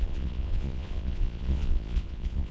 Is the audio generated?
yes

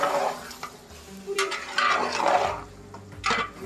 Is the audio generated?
no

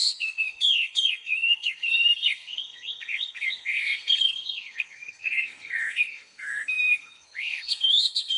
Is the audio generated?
yes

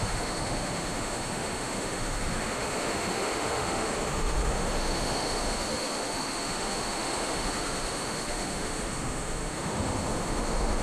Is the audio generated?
yes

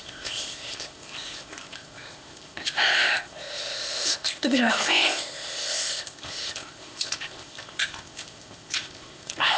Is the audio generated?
yes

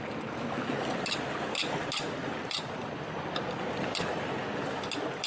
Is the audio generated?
no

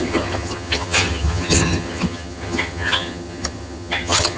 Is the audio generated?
yes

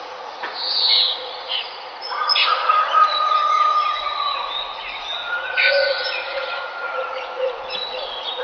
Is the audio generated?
yes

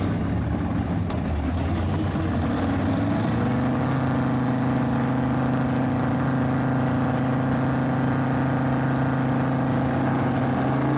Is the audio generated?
no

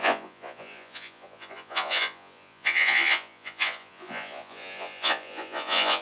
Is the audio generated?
yes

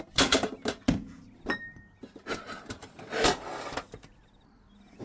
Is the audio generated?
no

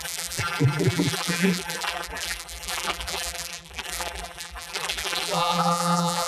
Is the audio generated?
yes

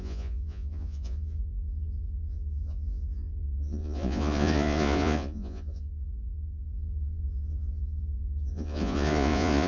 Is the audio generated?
yes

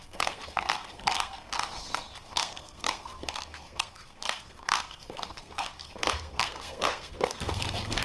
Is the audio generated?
yes